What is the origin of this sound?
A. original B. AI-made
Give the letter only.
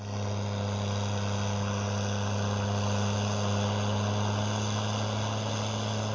A